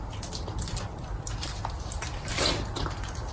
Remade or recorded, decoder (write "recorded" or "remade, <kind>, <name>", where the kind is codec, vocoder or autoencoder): recorded